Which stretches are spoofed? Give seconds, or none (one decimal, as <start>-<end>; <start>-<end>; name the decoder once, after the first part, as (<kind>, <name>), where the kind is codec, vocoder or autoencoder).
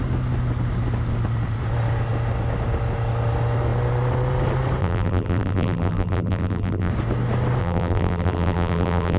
4.8-6.9 (vocoder, BigVGAN v2); 7.6-9.2